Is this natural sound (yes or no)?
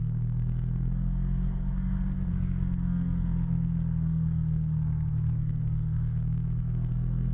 no